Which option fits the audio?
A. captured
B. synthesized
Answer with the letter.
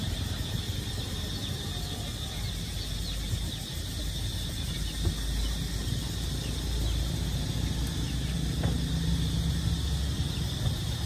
A